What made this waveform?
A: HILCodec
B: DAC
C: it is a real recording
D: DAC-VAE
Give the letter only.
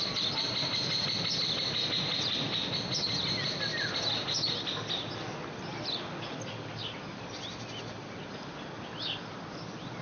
C